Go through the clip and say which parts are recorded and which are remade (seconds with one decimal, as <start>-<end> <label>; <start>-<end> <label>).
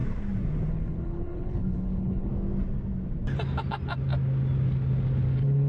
0.0-0.7 recorded; 0.7-2.3 remade; 2.3-5.3 recorded; 5.3-5.7 remade